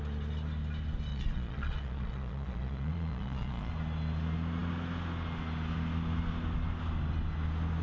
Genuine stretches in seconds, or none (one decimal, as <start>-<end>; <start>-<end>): 0.0-1.1; 3.7-7.8